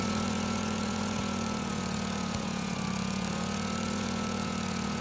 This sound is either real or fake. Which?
fake